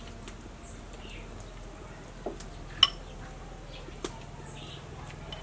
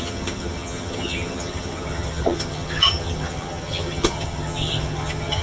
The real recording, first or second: first